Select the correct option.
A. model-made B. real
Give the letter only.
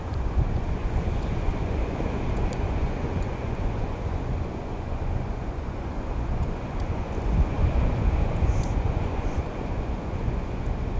A